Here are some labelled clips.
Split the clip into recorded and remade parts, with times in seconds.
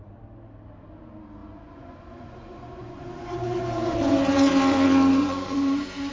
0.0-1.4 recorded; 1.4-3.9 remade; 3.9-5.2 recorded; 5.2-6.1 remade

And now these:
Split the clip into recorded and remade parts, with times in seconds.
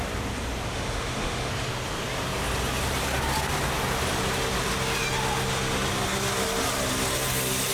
0.0-0.7 recorded; 0.7-1.5 remade; 1.5-7.7 recorded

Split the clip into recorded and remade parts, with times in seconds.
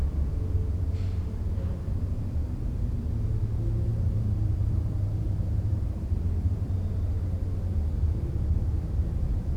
0.0-3.9 recorded; 3.9-6.7 remade; 6.7-9.6 recorded